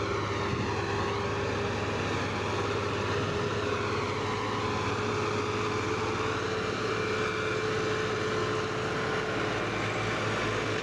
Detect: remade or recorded recorded